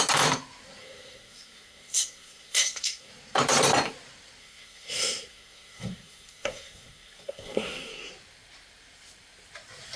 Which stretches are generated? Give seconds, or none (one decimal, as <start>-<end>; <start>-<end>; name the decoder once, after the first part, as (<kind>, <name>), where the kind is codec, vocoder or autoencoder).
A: 0.8-3.1 (codec, SNAC); 4.4-8.1